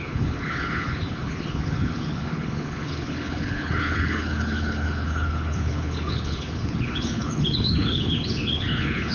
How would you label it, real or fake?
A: fake